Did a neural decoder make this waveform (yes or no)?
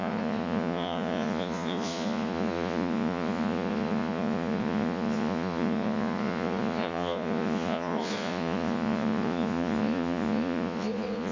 yes